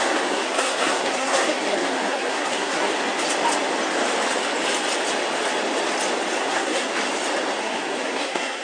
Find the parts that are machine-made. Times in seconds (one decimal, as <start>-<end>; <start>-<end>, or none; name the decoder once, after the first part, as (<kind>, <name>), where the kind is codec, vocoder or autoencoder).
0.0-2.9 (codec, SNAC); 6.4-6.9; 7.6-8.6